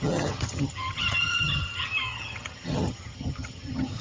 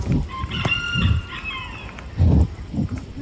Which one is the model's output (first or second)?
first